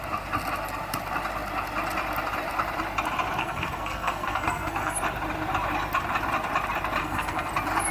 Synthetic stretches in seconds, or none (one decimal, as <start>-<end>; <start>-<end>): 3.4-5.0; 7.0-7.5